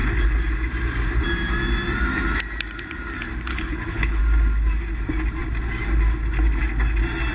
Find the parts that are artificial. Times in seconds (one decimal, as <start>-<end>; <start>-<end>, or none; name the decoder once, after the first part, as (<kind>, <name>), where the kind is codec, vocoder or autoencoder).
3.5-4.2 (codec, HILCodec)